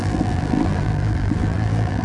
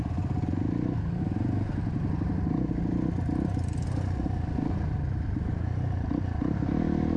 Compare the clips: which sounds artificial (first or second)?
first